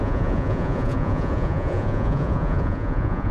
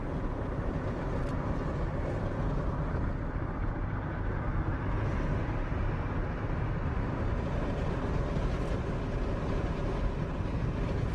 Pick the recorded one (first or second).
second